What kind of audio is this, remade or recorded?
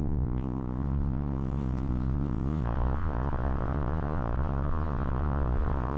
remade